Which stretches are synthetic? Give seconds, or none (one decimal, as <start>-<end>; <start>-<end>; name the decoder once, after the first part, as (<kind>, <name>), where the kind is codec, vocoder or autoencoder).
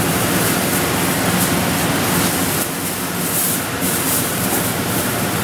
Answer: 0.0-0.7 (vocoder, BigVGAN v2); 3.8-5.4